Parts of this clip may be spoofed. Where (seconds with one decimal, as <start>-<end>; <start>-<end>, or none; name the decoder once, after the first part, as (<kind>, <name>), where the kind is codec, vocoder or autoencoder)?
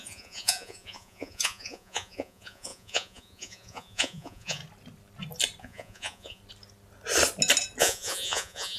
0.0-4.6 (vocoder, Vocos); 5.6-6.4; 7.8-8.8